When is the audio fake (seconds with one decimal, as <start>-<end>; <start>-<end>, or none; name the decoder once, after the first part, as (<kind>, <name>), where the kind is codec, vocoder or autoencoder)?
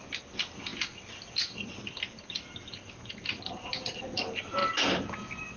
none